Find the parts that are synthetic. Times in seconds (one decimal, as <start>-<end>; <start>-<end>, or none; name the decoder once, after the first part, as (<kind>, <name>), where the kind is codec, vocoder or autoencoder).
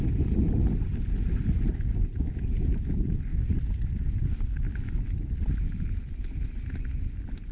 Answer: none